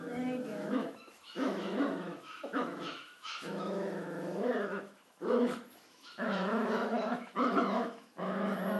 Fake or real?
fake